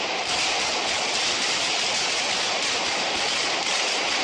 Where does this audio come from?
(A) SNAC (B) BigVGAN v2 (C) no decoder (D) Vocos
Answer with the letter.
C